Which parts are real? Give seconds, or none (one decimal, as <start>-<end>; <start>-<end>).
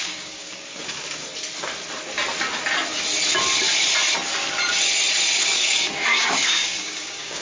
1.3-5.4